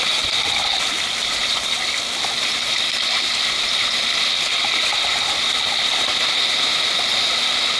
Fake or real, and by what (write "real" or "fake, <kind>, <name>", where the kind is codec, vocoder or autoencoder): fake, vocoder, BigVGAN v2